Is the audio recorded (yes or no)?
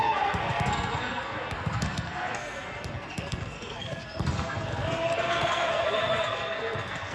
no